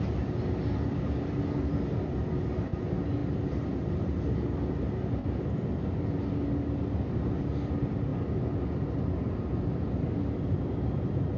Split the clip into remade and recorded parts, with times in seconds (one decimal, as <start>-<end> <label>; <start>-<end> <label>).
0.0-11.4 recorded